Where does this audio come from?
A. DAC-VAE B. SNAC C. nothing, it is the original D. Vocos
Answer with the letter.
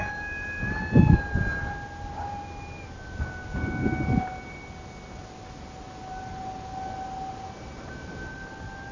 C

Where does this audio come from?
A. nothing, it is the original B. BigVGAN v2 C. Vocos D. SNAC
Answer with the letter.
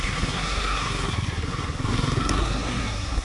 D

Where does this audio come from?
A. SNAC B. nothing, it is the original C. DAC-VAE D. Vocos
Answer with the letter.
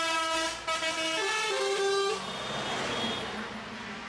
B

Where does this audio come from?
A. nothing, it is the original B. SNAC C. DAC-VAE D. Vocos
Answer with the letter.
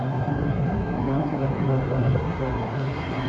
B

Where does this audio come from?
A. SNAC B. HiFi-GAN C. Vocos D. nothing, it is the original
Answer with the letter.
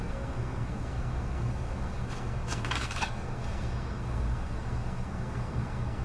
A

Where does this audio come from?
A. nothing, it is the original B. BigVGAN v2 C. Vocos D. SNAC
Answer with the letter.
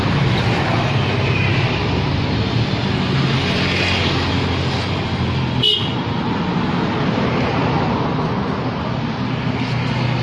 A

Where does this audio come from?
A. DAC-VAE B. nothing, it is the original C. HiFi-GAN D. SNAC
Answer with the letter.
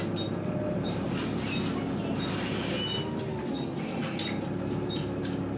B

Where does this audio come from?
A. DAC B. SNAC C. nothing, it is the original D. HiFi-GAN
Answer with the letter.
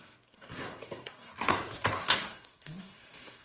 B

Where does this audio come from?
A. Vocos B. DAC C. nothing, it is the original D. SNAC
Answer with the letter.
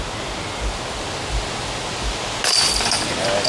C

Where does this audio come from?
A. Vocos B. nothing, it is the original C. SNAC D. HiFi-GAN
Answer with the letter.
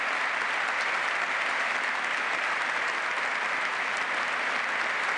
B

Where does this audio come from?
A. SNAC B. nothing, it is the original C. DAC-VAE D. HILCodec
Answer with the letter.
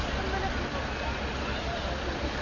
B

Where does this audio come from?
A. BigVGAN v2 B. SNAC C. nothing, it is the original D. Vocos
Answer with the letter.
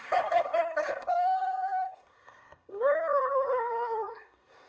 B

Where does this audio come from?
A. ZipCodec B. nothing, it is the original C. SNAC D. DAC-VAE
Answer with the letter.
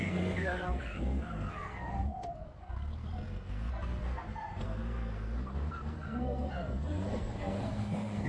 C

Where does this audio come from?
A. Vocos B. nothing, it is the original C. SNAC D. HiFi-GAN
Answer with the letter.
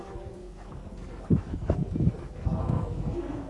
C